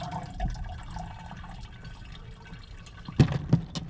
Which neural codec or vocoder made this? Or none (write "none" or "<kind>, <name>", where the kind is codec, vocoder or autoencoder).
none